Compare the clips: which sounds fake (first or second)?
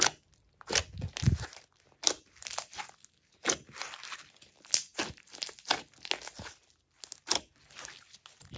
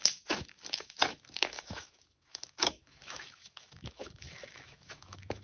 second